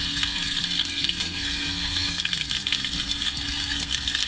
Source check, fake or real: fake